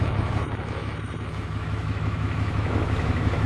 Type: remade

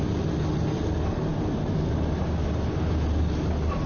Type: recorded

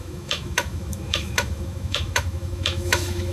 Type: remade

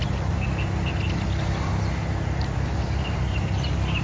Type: recorded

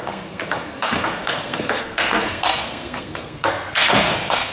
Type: remade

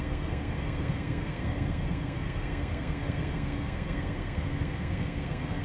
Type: remade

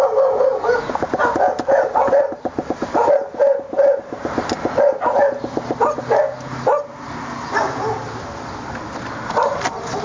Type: recorded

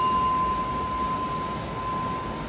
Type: recorded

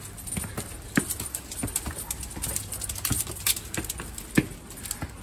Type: recorded